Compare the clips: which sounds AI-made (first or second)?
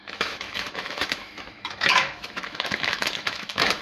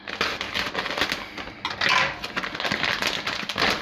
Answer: first